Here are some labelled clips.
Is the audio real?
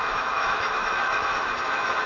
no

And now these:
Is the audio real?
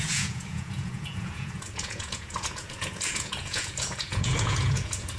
no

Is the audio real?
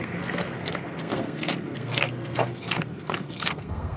no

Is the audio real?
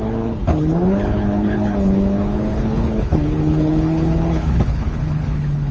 no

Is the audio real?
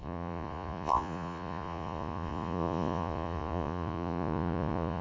no